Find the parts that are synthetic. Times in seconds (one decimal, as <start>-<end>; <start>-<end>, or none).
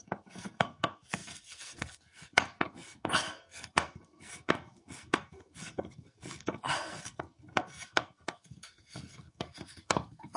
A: 0.0-10.4